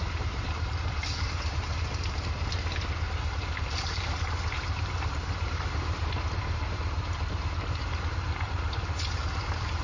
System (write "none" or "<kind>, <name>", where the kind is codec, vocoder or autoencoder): vocoder, BigVGAN v2